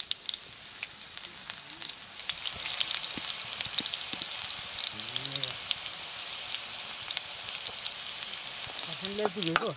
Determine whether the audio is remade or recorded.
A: recorded